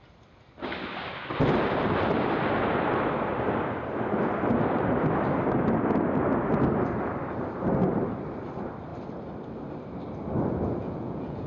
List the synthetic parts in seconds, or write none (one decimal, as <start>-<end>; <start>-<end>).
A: 10.8-11.5